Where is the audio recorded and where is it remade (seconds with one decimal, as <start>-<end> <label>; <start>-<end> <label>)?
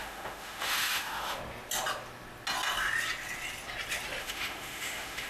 0.0-1.4 remade; 1.4-4.2 recorded; 4.2-5.3 remade